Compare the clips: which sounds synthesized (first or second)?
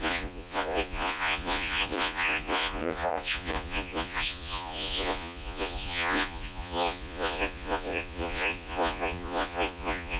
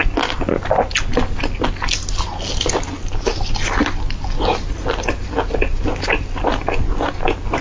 first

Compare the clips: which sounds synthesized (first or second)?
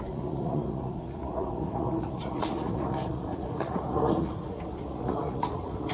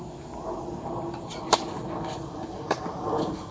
first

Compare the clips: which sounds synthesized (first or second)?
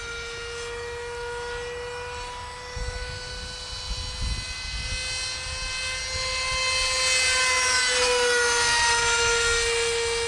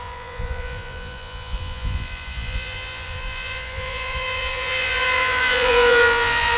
second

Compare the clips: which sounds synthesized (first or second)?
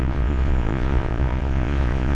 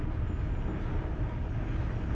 first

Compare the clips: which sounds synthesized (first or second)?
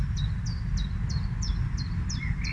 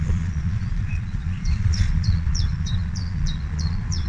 second